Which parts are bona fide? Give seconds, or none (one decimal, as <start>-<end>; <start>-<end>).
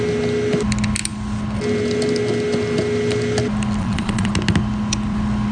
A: 0.0-3.8; 4.3-5.5